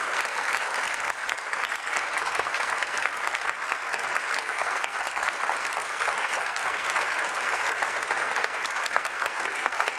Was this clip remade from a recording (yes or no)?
yes